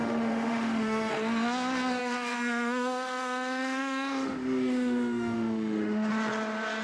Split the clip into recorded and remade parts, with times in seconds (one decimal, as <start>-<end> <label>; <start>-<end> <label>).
0.0-1.1 remade; 1.1-2.0 recorded; 2.0-6.1 remade; 6.1-6.8 recorded